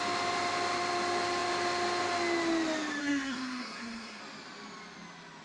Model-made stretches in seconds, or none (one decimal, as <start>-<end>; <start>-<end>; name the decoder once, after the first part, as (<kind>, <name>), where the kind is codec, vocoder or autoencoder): 3.0-4.2 (codec, SNAC)